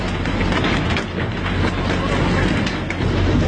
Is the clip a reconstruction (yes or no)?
no